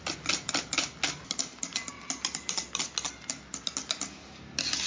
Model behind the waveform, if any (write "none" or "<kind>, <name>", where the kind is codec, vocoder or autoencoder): none